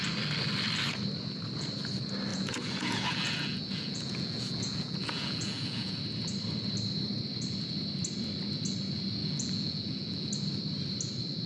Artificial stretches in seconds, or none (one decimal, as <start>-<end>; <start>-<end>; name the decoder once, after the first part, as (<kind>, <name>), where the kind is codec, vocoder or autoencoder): 2.3-6.0 (vocoder, Vocos); 9.2-10.3